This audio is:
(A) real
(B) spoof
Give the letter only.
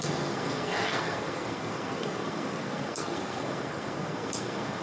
B